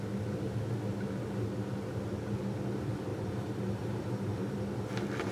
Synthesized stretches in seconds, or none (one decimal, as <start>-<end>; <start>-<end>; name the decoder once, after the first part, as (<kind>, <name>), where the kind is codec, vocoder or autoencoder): 3.1-4.5 (vocoder, BigVGAN v2)